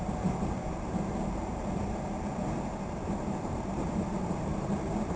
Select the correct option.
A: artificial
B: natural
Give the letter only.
A